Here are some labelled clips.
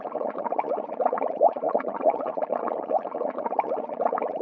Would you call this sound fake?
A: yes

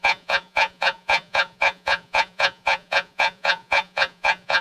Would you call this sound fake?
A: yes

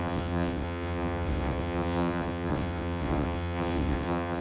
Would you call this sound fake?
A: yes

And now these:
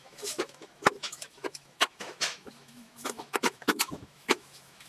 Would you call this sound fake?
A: yes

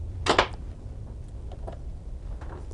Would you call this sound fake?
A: no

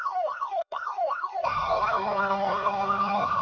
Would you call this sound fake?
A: yes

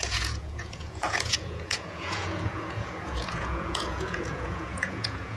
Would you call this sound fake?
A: yes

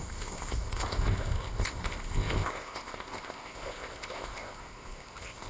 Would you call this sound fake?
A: yes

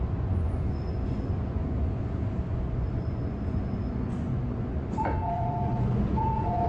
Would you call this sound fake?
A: yes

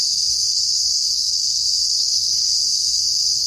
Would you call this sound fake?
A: yes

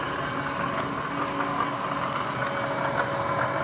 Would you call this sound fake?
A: no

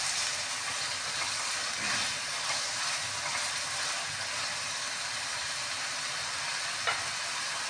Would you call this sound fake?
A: no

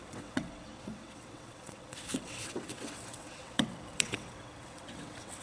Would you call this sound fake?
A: yes